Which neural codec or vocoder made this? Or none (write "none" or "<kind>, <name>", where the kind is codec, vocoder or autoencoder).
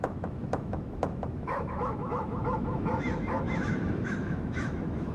autoencoder, DAC-VAE